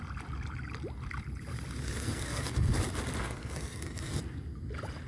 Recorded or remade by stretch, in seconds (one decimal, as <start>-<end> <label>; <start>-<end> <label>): 0.0-2.0 recorded; 2.0-2.7 remade; 2.7-3.2 recorded; 3.2-4.2 remade; 4.2-5.1 recorded